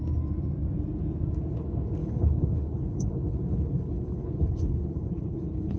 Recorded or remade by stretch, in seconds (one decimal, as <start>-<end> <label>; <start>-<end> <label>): 0.0-2.0 recorded; 2.0-5.8 remade